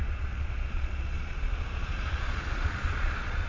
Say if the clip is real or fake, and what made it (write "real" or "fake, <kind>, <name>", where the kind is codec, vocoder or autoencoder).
fake, vocoder, Vocos